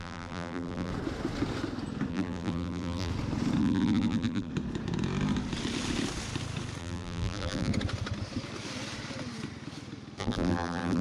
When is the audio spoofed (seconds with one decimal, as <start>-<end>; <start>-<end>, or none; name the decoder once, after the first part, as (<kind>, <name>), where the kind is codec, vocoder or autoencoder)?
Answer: 0.0-0.9 (vocoder, BigVGAN v2); 2.1-3.1; 3.6-4.5; 6.8-7.7; 10.2-11.0